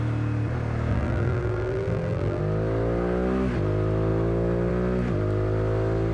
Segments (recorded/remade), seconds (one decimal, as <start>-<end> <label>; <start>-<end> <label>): 0.0-0.9 recorded; 0.9-2.4 remade; 2.4-6.1 recorded